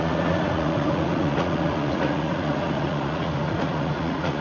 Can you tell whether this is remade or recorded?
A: remade